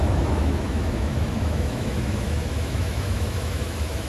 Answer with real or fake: fake